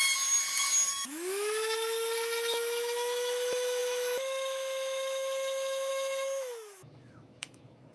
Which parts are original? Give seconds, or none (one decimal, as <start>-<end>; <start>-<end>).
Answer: 0.0-0.9